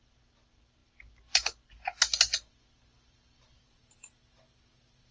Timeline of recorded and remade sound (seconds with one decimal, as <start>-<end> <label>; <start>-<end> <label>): 0.0-5.1 recorded